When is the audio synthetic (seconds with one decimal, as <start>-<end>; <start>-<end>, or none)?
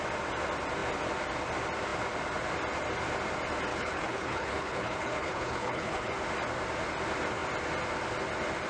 3.7-6.1